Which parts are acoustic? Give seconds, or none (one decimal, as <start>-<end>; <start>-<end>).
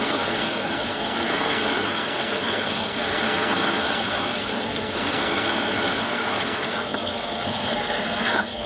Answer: none